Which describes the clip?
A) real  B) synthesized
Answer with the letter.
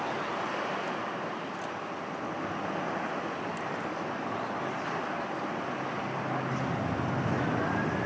A